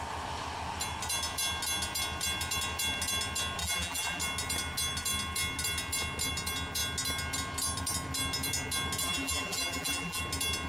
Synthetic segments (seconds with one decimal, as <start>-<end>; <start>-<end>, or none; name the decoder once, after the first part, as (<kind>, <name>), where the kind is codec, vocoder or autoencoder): 3.6-4.2 (vocoder, BigVGAN v2); 9.0-10.2